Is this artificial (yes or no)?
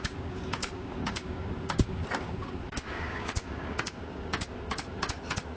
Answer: yes